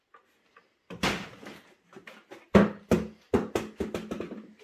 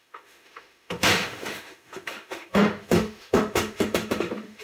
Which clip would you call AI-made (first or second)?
second